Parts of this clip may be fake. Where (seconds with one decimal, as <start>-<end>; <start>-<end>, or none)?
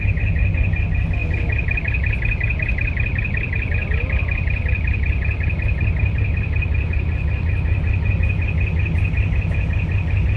none